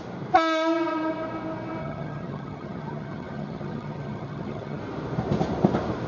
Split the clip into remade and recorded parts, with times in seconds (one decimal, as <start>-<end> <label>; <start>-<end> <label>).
0.0-1.8 recorded; 1.8-4.8 remade; 4.8-6.1 recorded